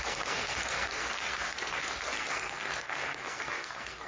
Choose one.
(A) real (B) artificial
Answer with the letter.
B